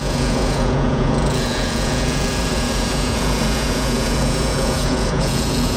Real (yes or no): no